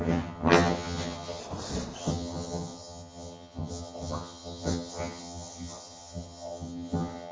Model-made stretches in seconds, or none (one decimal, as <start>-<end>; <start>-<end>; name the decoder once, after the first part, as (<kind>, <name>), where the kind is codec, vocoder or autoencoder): 0.0-1.4 (vocoder, HiFi-GAN); 2.0-7.3